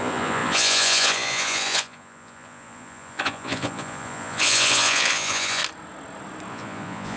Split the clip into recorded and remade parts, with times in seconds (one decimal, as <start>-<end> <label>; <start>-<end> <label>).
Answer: 0.0-5.6 remade; 5.6-6.5 recorded; 6.5-7.2 remade